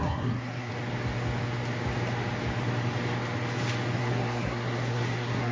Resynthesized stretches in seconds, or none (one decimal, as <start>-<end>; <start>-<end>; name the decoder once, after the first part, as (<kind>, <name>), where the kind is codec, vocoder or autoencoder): 0.0-0.7 (codec, SNAC); 4.0-5.5